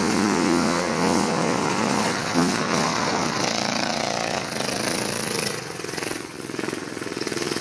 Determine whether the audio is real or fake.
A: fake